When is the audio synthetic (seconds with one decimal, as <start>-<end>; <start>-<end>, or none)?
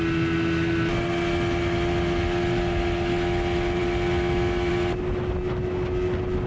none